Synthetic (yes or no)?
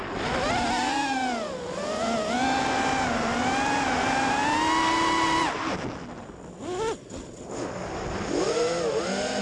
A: no